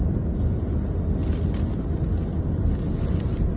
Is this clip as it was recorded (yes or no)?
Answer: yes